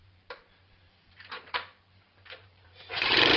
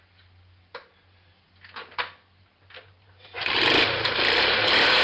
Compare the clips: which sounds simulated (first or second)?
first